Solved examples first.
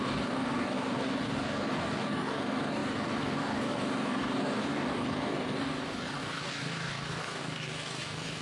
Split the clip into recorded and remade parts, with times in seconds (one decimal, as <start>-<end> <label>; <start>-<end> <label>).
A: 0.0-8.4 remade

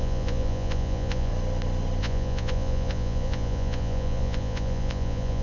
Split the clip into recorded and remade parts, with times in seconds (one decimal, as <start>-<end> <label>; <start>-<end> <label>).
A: 0.0-1.3 remade; 1.3-2.0 recorded; 2.0-5.4 remade

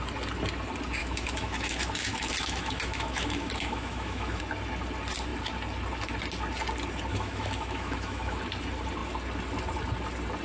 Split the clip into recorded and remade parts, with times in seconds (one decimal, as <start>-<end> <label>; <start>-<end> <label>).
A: 0.0-1.0 recorded; 1.0-4.4 remade; 4.4-7.1 recorded; 7.1-8.4 remade; 8.4-10.4 recorded

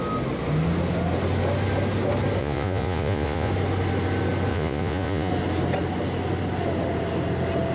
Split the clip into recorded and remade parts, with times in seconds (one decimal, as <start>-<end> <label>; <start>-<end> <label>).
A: 0.0-2.4 recorded; 2.4-3.5 remade; 3.5-4.5 recorded; 4.5-5.3 remade; 5.3-7.7 recorded